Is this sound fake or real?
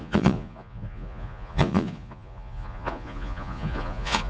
fake